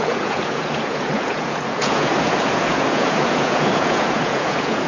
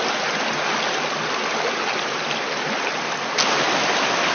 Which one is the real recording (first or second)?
second